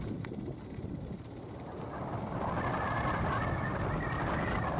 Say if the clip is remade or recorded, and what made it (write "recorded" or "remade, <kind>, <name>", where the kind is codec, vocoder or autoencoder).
recorded